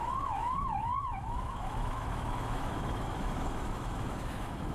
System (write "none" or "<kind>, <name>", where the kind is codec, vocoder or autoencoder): autoencoder, DAC-VAE